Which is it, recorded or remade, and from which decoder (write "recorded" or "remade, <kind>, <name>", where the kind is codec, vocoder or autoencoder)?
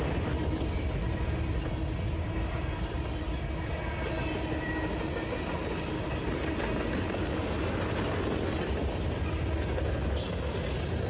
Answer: recorded